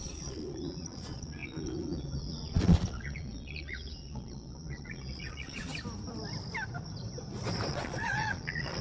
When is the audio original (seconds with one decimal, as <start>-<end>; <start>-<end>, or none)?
5.7-7.7